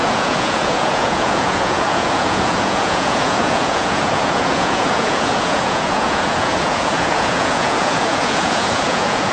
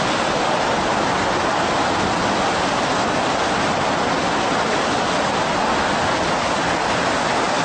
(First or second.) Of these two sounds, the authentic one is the second